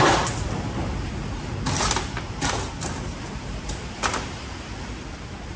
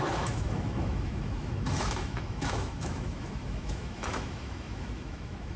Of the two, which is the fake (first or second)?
second